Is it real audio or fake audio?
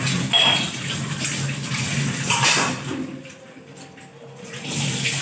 real